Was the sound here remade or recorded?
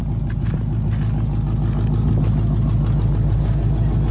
recorded